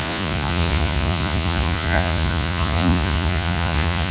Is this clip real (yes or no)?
no